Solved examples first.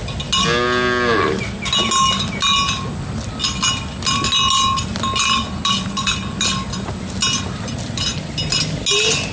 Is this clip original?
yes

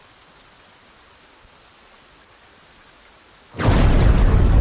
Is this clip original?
yes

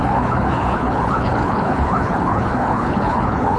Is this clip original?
no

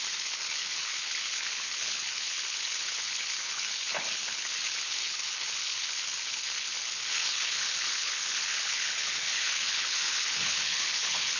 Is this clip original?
no